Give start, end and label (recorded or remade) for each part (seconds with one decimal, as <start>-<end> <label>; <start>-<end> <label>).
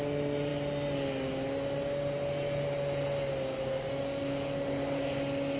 0.0-5.6 recorded